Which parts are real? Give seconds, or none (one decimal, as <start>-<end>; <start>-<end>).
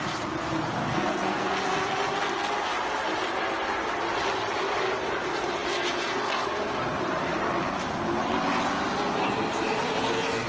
0.0-0.8; 1.5-10.5